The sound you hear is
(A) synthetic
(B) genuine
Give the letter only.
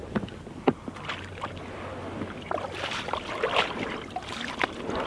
B